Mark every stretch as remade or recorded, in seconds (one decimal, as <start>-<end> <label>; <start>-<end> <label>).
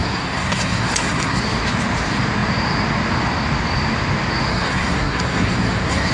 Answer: 0.0-1.4 remade; 1.4-4.5 recorded; 4.5-6.1 remade